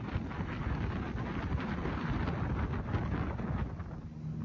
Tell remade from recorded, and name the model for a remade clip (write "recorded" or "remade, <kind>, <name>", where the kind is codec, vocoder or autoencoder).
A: recorded